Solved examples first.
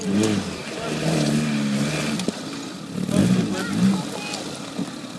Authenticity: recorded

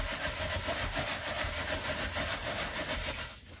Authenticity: recorded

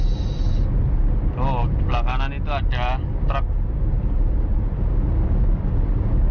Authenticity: recorded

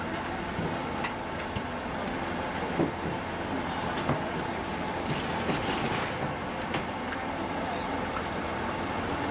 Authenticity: recorded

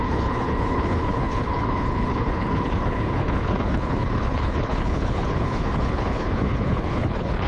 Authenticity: remade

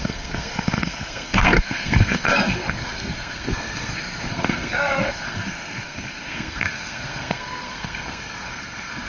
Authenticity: remade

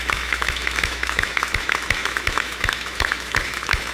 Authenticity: remade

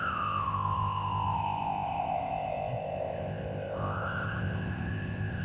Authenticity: remade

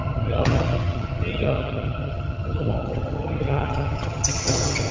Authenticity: remade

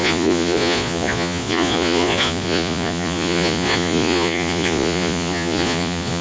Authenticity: remade